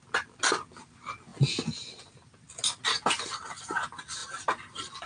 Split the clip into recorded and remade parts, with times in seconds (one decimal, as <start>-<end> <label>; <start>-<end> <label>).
0.0-4.2 recorded; 4.2-5.1 remade